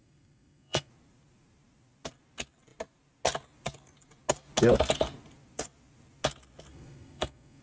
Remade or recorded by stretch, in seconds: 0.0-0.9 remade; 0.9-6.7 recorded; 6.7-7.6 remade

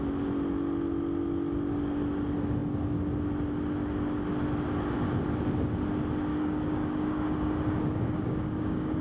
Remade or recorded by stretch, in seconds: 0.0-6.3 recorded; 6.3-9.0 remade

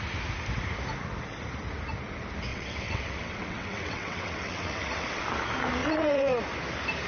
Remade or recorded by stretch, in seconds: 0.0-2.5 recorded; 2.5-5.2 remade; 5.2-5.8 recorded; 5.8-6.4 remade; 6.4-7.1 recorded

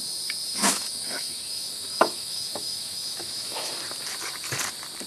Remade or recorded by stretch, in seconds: 0.0-0.6 recorded; 0.6-3.7 remade; 3.7-5.1 recorded

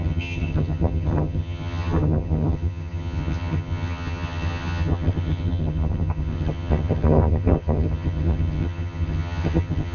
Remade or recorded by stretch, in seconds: 0.0-9.9 remade

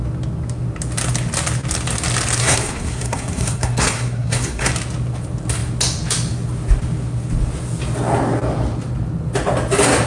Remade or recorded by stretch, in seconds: 0.0-2.4 recorded; 2.4-4.7 remade; 4.7-10.1 recorded

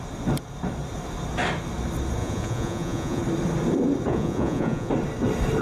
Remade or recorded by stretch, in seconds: 0.0-2.2 recorded; 2.2-3.2 remade; 3.2-4.1 recorded; 4.1-4.9 remade; 4.9-5.6 recorded

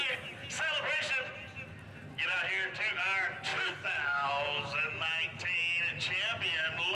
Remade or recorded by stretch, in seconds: 0.0-3.5 recorded; 3.5-4.3 remade; 4.3-6.9 recorded